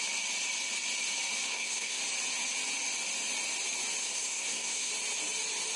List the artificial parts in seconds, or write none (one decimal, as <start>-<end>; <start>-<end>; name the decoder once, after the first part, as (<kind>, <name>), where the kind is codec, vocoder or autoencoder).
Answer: 1.5-2.0 (codec, SNAC); 4.0-4.9